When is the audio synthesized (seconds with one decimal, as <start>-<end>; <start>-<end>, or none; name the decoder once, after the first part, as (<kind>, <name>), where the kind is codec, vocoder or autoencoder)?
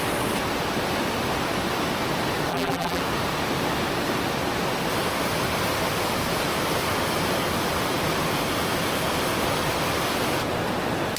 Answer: 2.5-3.0 (vocoder, BigVGAN v2)